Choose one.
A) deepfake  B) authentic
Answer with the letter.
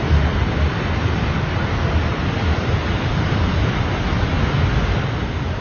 B